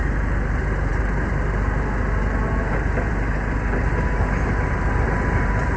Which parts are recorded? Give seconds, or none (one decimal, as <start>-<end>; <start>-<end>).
0.0-5.8